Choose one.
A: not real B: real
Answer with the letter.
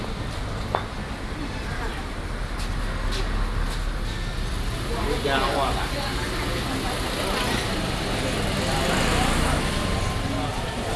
B